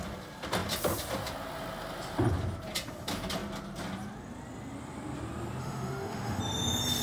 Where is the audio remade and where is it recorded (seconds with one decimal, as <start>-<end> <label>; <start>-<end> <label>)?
0.0-5.6 recorded; 5.6-6.4 remade; 6.4-7.0 recorded